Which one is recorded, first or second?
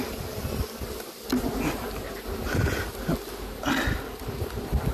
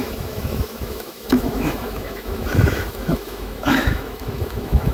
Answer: first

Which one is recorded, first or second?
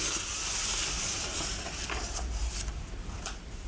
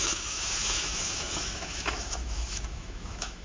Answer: first